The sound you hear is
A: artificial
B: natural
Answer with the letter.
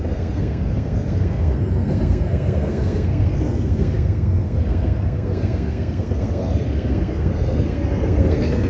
A